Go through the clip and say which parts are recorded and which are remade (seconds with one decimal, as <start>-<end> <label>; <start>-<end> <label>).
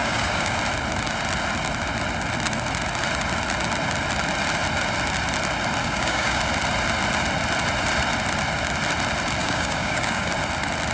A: 0.0-0.6 remade; 0.6-5.8 recorded; 5.8-6.4 remade; 6.4-9.4 recorded; 9.4-10.3 remade; 10.3-10.9 recorded